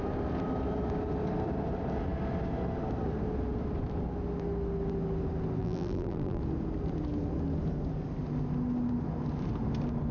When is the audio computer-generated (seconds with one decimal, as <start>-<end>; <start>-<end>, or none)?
5.6-6.4